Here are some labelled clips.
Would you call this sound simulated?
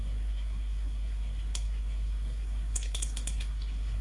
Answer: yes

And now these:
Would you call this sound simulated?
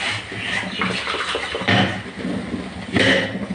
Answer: no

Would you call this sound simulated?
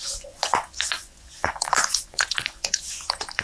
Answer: yes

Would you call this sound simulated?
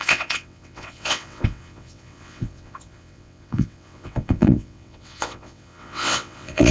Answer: yes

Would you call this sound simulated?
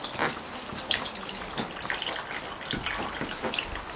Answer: no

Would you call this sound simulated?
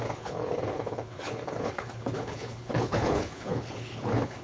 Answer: yes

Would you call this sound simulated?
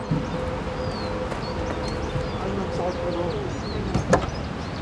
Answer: no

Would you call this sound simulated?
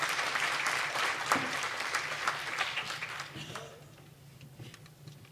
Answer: yes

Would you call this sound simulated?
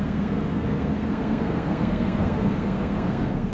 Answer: yes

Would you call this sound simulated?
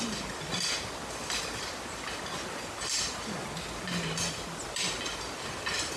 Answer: no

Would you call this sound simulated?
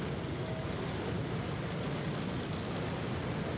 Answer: no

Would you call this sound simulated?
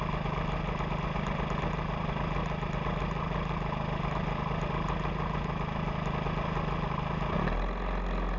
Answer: no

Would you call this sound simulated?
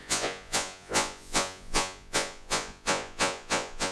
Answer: yes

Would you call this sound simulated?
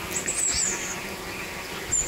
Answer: no